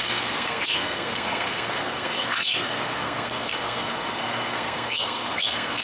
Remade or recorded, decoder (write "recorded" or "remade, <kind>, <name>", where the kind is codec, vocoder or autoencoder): remade, codec, SNAC